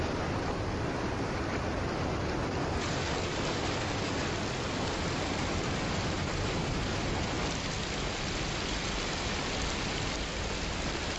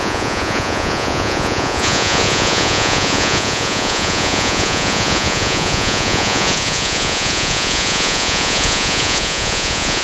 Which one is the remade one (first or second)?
second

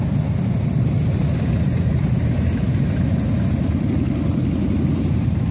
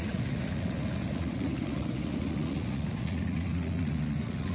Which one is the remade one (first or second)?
second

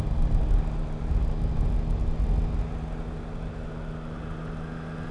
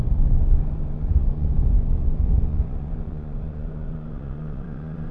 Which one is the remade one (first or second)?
second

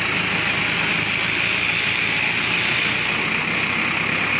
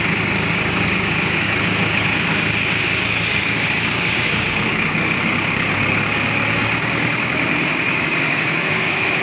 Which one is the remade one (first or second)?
second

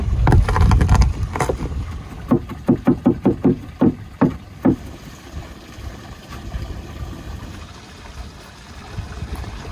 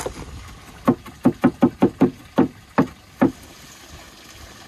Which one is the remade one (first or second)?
first